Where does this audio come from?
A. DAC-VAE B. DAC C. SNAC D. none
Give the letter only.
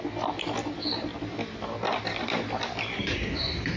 D